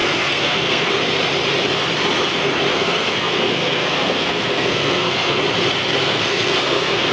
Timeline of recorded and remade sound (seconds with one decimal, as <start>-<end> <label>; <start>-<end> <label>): 0.0-0.9 remade; 0.9-2.7 recorded; 2.7-5.4 remade; 5.4-6.0 recorded; 6.0-7.1 remade